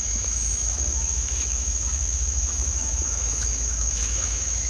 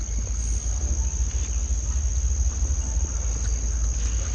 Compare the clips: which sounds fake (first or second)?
first